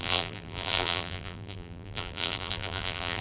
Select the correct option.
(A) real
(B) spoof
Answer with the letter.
B